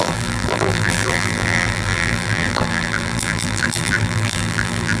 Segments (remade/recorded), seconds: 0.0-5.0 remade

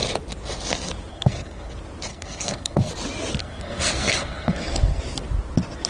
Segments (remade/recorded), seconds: 0.0-1.1 recorded; 1.1-1.7 remade; 1.7-2.1 recorded; 2.1-2.9 remade; 2.9-3.4 recorded; 3.4-5.0 remade; 5.0-5.9 recorded